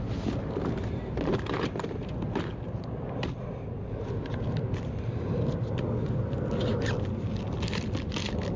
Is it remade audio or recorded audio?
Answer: recorded